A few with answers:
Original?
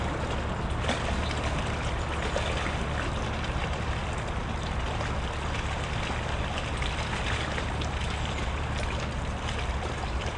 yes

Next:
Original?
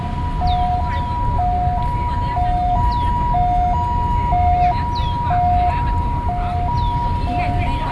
yes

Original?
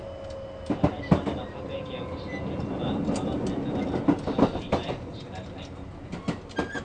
yes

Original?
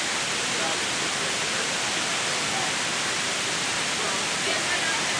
yes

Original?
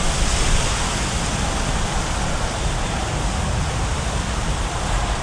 yes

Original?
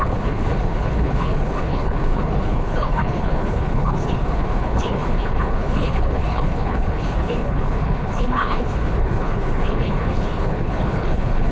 no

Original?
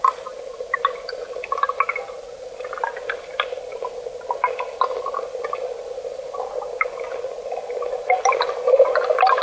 yes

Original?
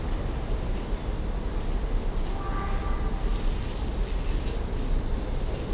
yes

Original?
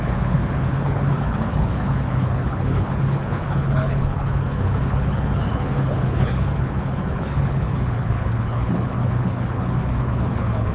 no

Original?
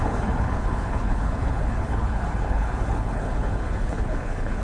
no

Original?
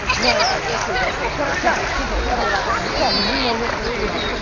yes